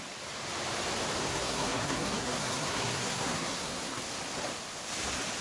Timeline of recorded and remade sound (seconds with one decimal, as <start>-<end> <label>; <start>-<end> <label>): 0.0-1.2 recorded; 1.2-4.0 remade; 4.0-5.4 recorded